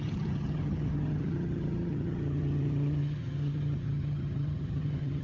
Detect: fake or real fake